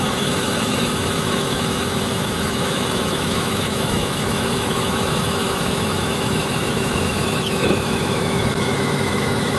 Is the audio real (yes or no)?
no